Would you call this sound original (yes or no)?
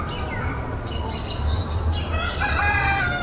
yes